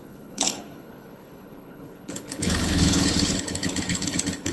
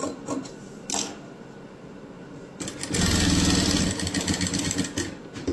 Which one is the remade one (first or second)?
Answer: first